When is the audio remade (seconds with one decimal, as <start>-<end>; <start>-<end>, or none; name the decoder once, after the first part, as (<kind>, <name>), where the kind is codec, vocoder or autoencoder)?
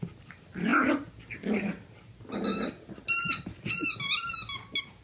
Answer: none